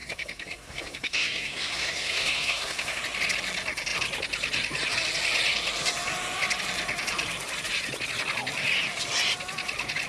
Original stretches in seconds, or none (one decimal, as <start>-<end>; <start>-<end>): 3.0-10.1